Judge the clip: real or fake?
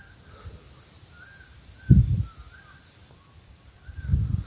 real